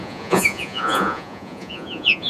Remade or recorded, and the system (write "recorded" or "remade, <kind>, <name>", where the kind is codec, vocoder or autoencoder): remade, vocoder, Vocos